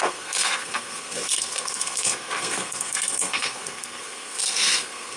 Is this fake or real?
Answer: fake